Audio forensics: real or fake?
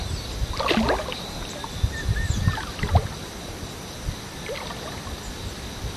real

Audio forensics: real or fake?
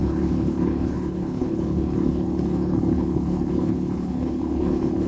fake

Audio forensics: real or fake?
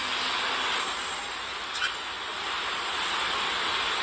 real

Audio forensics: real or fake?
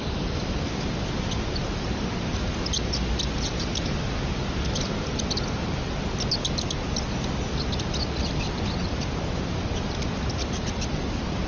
real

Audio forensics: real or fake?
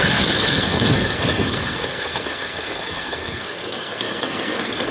fake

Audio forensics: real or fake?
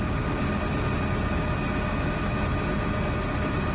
real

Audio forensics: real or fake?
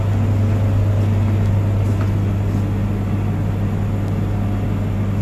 real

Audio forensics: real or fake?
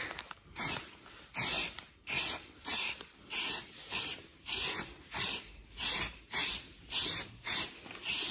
fake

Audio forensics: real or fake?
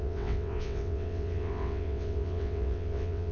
fake